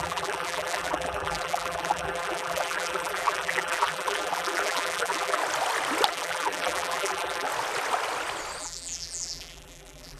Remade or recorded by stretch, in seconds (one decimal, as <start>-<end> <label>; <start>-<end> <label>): 0.0-5.4 remade; 5.4-6.1 recorded; 6.1-7.5 remade; 7.5-8.6 recorded; 8.6-10.2 remade